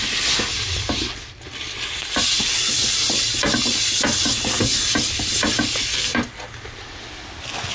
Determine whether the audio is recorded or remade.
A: recorded